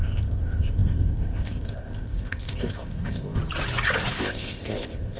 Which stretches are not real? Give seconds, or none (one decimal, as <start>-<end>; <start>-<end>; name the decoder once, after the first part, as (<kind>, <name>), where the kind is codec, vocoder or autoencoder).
0.0-3.4 (codec, ZipCodec); 4.1-5.2